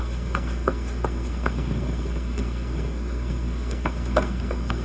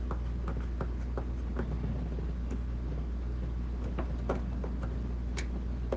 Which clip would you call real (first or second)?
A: second